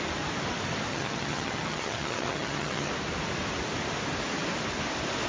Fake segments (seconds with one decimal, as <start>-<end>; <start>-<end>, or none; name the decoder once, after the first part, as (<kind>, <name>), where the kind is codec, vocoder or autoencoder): 0.9-2.9 (vocoder, HiFi-GAN)